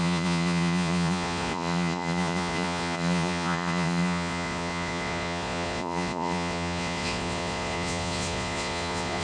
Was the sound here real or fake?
fake